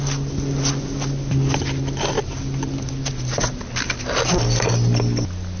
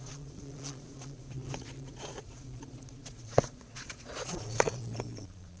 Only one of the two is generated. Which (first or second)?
second